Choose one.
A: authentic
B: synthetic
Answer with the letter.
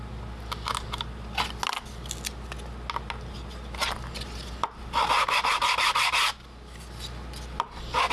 A